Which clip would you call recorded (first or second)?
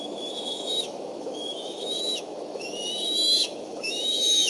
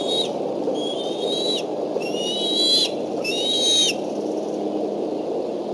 second